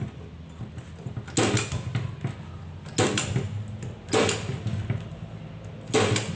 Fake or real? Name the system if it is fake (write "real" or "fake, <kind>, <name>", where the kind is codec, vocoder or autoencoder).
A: real